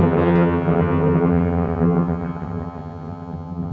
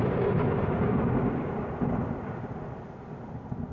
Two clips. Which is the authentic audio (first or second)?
second